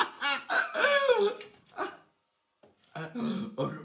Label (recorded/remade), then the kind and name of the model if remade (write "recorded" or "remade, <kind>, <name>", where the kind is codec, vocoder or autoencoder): recorded